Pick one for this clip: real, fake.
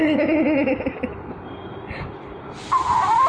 real